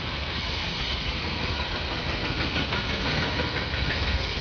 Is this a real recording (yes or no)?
no